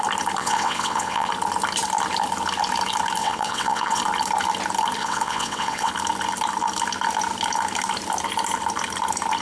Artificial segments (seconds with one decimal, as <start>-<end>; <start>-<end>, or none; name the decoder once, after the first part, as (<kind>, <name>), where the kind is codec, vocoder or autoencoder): 0.4-1.3 (vocoder, WaveNeXt); 3.2-4.0; 5.0-5.9